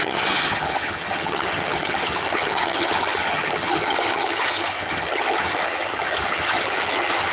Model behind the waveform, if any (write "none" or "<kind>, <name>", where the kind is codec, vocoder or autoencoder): vocoder, HiFi-GAN